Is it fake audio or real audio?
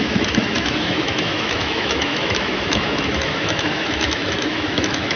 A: fake